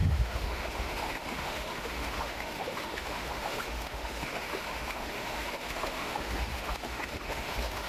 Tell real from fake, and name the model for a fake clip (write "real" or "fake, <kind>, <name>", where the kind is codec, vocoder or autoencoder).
fake, autoencoder, DAC-VAE